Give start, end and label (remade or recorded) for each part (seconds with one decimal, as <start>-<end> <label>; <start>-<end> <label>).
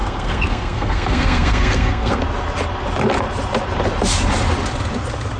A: 0.0-2.2 remade; 2.2-5.4 recorded